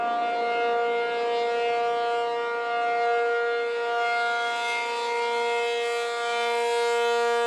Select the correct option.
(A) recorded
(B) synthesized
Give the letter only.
A